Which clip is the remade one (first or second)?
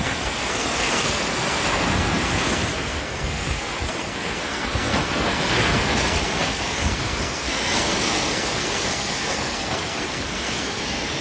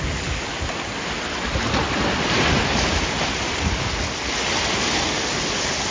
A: first